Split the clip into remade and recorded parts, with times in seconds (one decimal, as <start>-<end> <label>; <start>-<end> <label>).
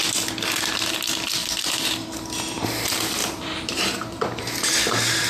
0.0-3.2 recorded; 3.2-5.3 remade